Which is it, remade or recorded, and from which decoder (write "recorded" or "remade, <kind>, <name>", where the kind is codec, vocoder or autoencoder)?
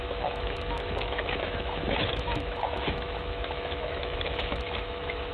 remade, autoencoder, DAC-VAE